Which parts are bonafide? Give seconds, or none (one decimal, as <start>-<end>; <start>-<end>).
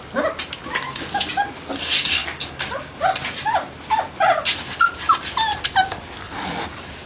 0.0-7.1